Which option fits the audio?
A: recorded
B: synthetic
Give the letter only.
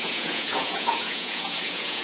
B